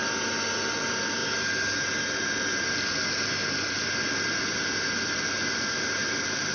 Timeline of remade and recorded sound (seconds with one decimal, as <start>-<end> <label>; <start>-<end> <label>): 0.0-6.5 recorded